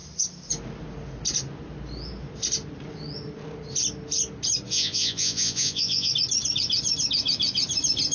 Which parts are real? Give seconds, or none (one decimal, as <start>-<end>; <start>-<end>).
0.0-4.7; 6.1-8.1

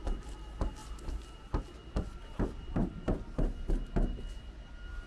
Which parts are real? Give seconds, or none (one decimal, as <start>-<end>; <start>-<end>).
0.0-5.1

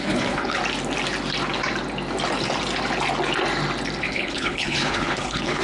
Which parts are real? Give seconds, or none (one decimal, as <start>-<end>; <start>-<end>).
0.6-4.0

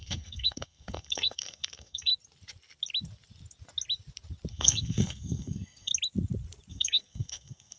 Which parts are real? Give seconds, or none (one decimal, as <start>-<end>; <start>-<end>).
2.1-4.5; 5.9-6.7

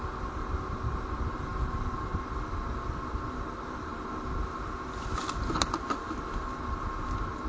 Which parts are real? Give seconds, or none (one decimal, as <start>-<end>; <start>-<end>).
0.0-7.5

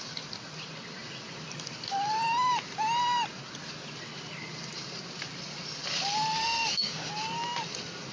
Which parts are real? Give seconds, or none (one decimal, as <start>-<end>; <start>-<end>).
0.0-6.4; 7.1-8.1